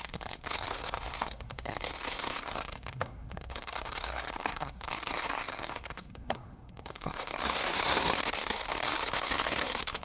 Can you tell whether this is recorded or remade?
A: remade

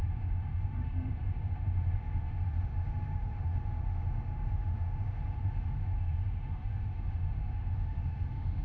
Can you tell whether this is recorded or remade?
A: remade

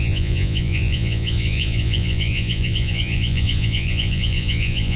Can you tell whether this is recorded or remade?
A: remade